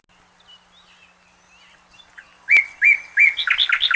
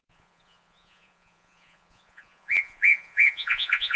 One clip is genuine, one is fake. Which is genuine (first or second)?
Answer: first